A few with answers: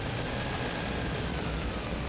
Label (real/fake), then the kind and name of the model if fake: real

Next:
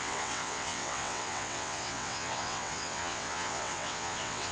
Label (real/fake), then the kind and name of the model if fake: fake, vocoder, WaveNeXt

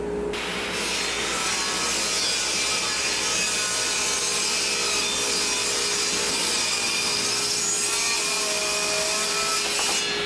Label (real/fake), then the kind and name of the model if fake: real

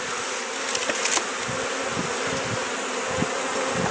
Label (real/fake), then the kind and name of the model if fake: real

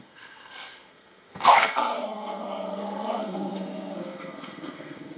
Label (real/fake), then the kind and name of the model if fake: fake, codec, SNAC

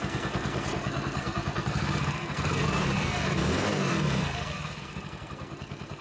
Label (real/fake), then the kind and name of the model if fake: fake, codec, SNAC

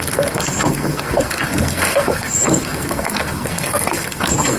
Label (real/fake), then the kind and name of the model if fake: fake, codec, SNAC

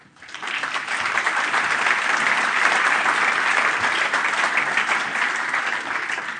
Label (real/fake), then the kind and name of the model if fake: fake, vocoder, BigVGAN v2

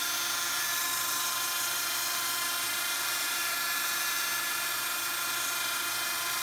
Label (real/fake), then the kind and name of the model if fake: real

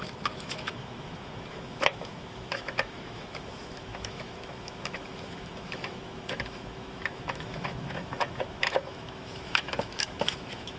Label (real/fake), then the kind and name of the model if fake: fake, autoencoder, DAC-VAE